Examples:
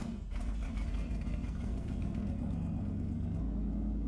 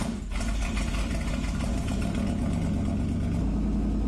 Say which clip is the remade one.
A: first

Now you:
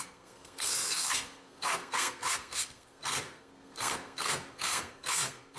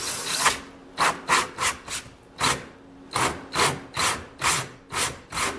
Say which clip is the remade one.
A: first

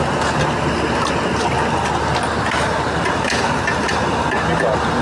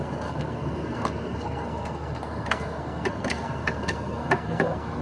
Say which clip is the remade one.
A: second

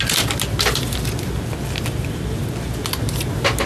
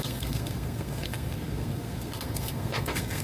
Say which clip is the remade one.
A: second